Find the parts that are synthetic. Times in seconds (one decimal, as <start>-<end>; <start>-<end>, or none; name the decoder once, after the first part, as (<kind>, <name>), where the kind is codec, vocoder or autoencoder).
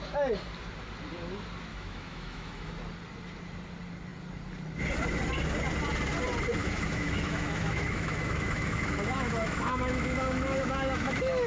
1.7-2.7 (autoencoder, DAC-VAE); 6.6-11.5